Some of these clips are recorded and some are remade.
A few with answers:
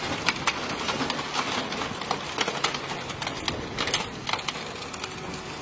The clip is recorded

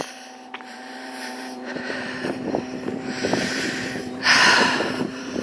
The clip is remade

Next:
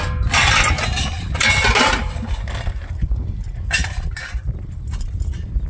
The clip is recorded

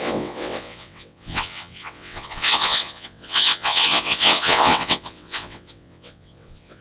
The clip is remade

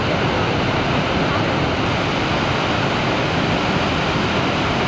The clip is recorded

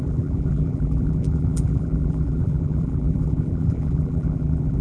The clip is remade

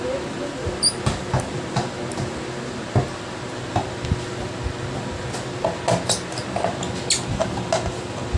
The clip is recorded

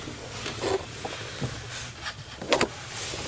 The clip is recorded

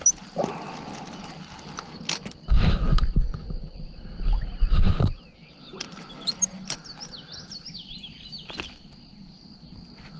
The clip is recorded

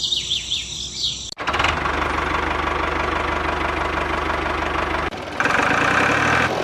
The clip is recorded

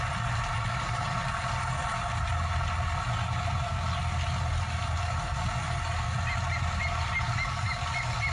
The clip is recorded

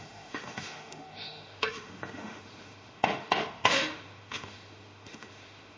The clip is remade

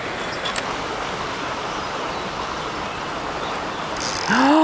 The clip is recorded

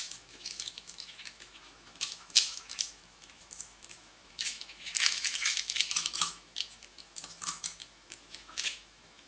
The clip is remade